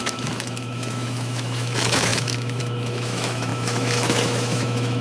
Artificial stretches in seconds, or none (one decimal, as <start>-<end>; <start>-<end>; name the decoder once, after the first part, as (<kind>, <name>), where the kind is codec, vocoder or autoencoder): 0.0-5.0 (autoencoder, DAC-VAE)